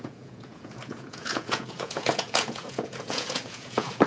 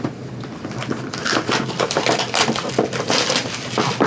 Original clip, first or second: second